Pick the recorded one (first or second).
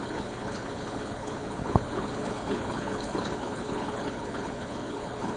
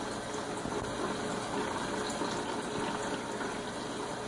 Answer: second